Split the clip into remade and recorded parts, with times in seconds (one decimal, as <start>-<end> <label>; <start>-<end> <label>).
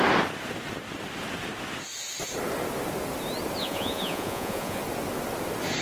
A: 0.0-3.6 recorded; 3.6-4.8 remade; 4.8-5.8 recorded